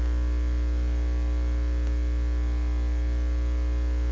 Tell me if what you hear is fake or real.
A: real